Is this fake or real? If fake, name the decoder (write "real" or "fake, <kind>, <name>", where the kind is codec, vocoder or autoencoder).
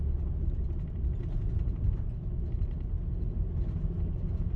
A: real